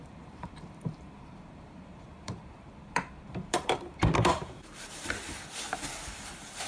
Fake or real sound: fake